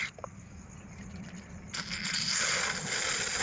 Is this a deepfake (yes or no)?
no